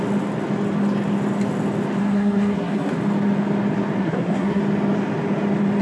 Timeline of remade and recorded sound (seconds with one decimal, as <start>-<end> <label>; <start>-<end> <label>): 0.0-2.0 recorded; 2.0-2.9 remade; 2.9-4.0 recorded; 4.0-4.6 remade; 4.6-5.8 recorded